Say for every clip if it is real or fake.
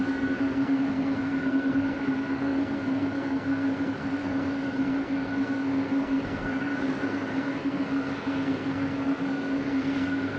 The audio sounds fake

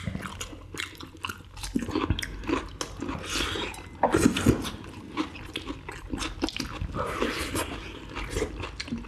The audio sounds real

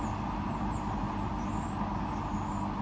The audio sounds real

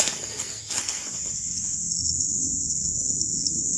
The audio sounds fake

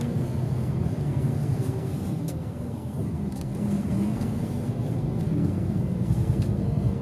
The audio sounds fake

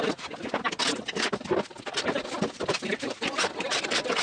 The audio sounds real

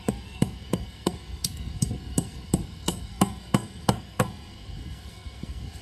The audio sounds fake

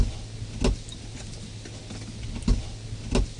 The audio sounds real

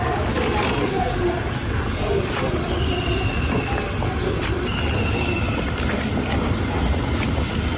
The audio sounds real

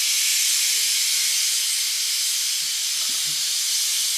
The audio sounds real